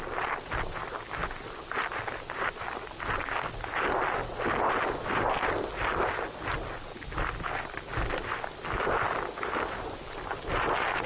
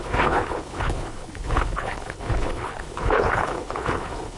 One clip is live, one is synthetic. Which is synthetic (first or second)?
second